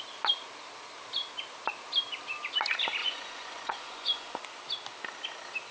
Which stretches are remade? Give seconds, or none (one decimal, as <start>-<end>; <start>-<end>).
3.0-4.4